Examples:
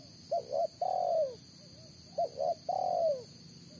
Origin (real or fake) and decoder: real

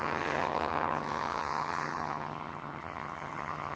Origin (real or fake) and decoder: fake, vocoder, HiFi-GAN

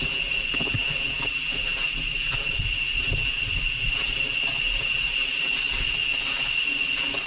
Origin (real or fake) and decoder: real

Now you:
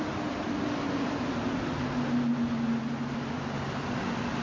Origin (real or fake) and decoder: real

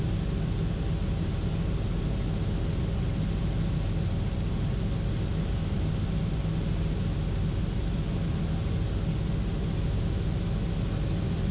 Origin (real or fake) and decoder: real